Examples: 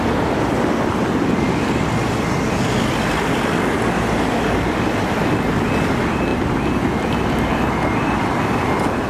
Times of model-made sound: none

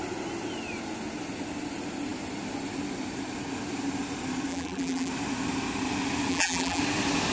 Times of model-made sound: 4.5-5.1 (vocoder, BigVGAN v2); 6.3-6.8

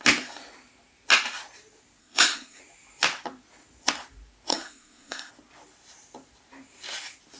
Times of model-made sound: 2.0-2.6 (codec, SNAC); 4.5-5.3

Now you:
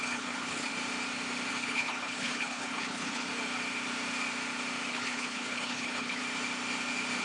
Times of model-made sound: 0.0-0.7 (codec, HILCodec); 1.5-3.3; 4.9-6.2

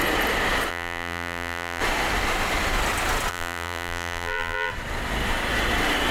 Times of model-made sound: 0.7-1.8 (vocoder, BigVGAN v2); 3.3-4.7

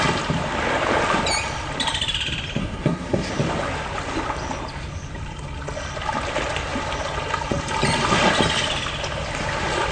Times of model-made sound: 2.6-3.3 (codec, SNAC)

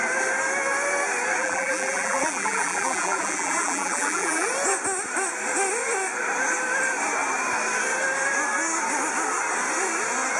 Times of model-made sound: 1.4-4.5 (vocoder, BigVGAN v2)

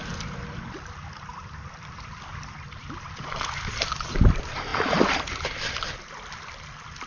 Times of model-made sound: none